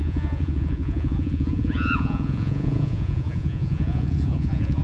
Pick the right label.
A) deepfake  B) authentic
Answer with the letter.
A